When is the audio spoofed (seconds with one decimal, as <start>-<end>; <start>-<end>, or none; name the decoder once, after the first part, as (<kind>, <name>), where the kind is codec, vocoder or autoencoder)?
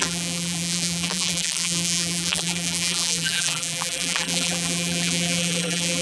0.0-6.0 (vocoder, BigVGAN v2)